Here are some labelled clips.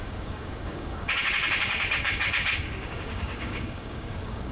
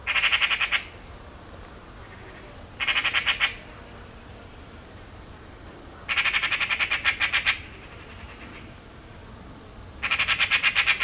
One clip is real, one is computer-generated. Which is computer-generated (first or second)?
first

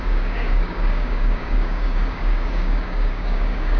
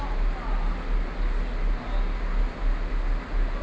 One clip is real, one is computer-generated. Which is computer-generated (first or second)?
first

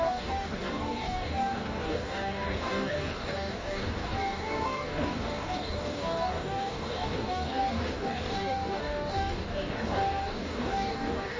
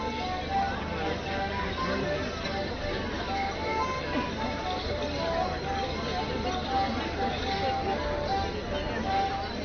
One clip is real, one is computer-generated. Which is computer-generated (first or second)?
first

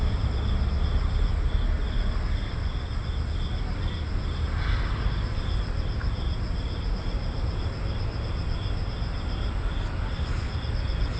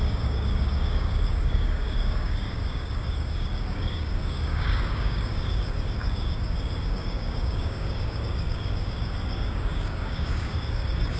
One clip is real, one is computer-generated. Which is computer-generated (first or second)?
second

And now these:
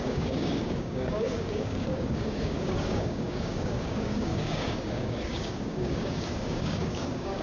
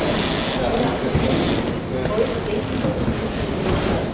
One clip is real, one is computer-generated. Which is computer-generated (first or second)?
first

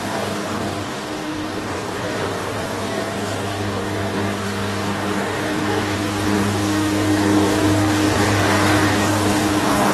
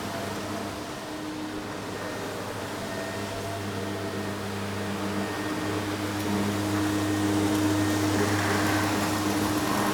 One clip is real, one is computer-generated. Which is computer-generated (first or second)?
first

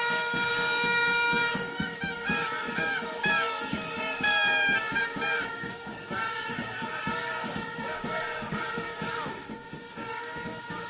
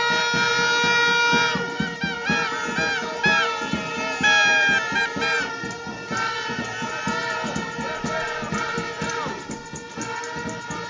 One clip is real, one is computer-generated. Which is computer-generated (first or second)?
first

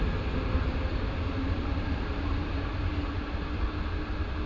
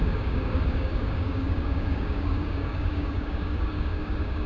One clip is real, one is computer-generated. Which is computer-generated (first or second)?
second